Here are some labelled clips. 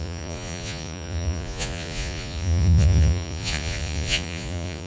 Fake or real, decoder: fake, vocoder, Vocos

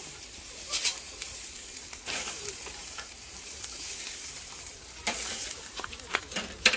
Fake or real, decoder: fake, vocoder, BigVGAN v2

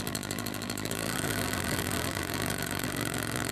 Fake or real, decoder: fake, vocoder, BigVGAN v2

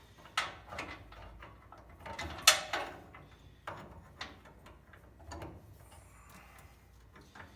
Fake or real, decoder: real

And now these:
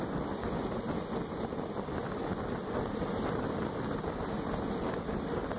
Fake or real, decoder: real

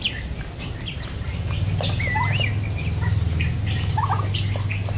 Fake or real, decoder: real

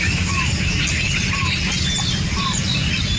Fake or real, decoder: real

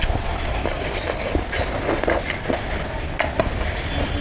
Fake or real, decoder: fake, vocoder, BigVGAN v2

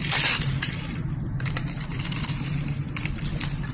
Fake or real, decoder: fake, vocoder, BigVGAN v2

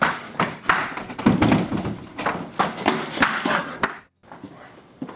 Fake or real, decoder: real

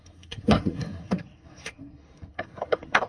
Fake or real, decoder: fake, codec, SNAC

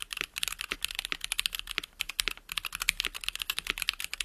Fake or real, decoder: real